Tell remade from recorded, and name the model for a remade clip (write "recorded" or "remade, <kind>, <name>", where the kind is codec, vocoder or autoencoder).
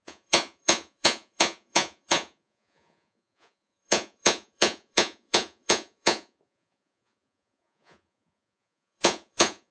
remade, vocoder, Vocos